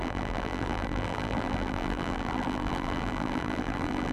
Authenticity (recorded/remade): remade